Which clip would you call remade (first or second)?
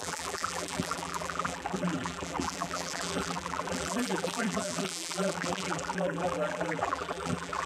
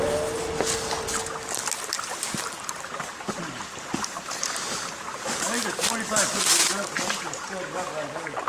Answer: first